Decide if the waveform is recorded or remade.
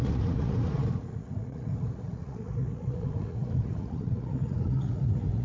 remade